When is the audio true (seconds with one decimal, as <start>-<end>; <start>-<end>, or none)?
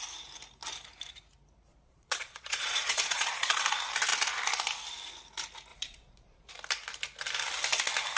0.0-1.7; 3.6-5.7; 6.5-8.2